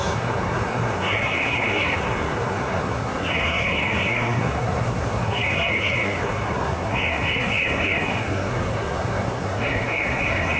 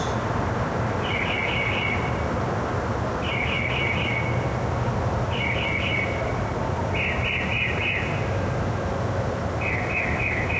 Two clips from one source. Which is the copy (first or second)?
first